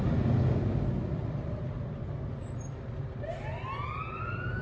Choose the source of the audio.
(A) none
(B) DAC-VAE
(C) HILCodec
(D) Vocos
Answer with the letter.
A